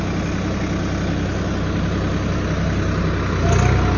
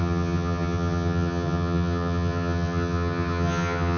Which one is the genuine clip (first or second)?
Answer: first